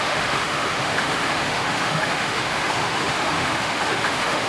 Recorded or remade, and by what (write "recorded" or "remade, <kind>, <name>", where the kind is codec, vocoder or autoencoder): remade, autoencoder, DAC-VAE